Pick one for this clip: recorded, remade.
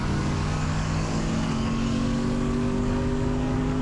remade